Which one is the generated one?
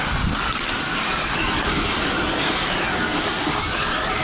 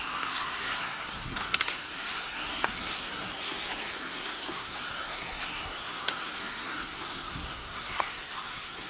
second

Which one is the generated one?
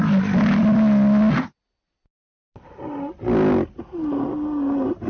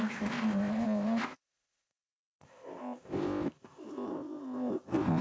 second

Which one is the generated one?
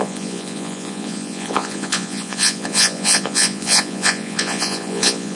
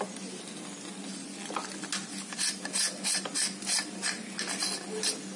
first